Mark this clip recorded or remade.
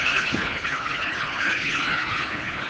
remade